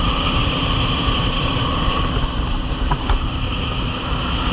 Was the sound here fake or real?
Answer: fake